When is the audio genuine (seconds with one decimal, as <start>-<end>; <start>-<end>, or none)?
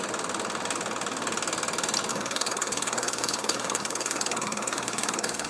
0.0-2.1